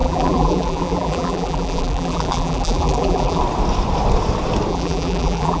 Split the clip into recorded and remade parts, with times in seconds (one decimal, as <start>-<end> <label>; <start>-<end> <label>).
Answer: 0.0-3.4 remade; 3.4-4.7 recorded; 4.7-5.6 remade